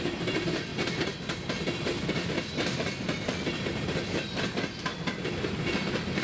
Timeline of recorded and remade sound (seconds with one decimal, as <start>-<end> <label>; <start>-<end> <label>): 0.0-0.7 recorded; 0.7-4.4 remade; 4.4-4.9 recorded; 4.9-6.2 remade